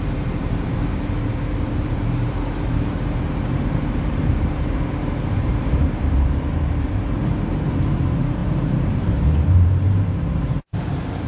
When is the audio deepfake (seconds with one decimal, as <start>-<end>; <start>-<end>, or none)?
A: 0.0-11.3